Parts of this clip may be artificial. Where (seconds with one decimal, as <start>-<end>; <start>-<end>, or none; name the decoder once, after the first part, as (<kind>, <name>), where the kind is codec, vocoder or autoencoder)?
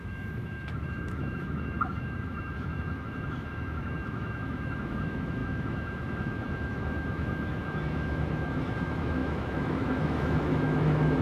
0.0-11.2 (autoencoder, DAC-VAE)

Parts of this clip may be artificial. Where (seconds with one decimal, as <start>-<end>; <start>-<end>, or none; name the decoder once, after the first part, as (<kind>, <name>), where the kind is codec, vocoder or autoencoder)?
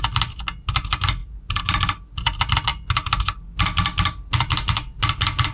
none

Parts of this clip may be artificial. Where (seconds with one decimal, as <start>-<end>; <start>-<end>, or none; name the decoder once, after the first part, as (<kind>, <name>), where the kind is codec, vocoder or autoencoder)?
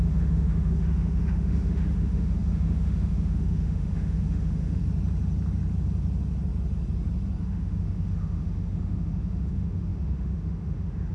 0.0-4.8 (autoencoder, DAC-VAE); 7.4-11.1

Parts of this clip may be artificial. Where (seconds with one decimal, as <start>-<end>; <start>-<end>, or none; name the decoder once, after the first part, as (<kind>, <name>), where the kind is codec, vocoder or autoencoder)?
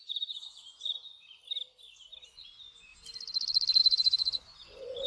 0.0-1.4 (vocoder, Vocos); 2.3-2.9; 3.8-5.1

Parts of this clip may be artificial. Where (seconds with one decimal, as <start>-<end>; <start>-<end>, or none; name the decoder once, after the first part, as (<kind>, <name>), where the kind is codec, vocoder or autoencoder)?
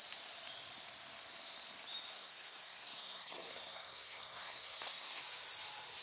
2.1-5.2 (codec, SNAC)